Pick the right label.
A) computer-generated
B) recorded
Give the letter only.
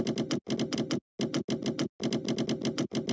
B